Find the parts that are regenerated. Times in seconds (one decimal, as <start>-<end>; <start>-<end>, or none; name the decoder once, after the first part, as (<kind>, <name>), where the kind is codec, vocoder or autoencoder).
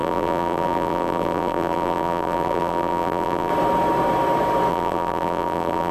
0.0-3.5 (vocoder, BigVGAN v2); 4.7-5.9